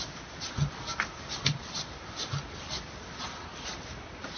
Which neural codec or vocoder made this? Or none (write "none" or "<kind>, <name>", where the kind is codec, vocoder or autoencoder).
none